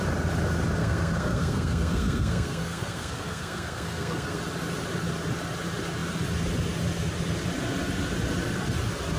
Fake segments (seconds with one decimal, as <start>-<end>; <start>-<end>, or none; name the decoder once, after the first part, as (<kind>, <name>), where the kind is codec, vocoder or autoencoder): 0.8-4.4 (codec, SNAC)